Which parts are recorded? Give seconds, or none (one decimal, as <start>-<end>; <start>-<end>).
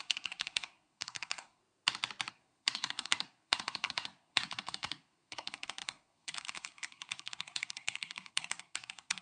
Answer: 1.6-2.3